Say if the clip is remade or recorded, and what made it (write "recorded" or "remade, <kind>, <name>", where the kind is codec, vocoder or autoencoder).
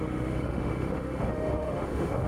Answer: remade, autoencoder, DAC-VAE